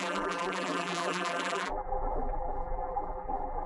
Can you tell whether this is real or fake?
fake